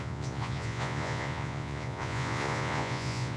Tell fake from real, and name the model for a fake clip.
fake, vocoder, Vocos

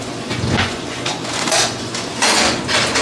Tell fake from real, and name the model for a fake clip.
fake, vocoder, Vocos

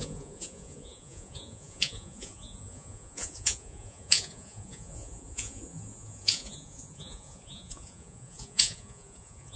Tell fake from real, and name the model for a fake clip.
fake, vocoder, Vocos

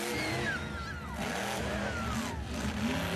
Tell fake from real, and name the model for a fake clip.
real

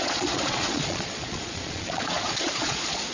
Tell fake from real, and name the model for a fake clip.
fake, vocoder, Vocos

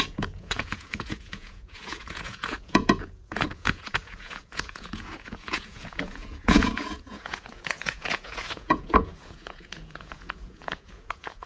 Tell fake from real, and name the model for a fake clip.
fake, vocoder, Vocos